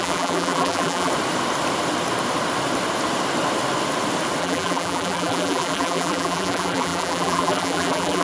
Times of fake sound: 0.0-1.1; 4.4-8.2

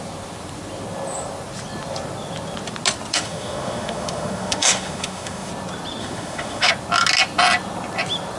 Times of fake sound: 3.1-5.5; 6.0-6.7